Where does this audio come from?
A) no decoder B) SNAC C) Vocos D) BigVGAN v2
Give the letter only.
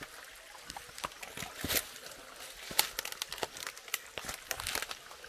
A